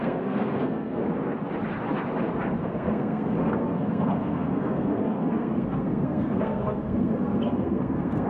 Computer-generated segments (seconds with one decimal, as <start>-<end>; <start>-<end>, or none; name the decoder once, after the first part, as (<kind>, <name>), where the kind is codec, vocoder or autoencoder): 0.0-1.0 (codec, SNAC); 2.6-8.3